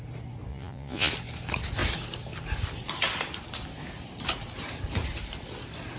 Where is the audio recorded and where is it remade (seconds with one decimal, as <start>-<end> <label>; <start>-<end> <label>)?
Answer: 0.0-0.5 recorded; 0.5-1.1 remade; 1.1-6.0 recorded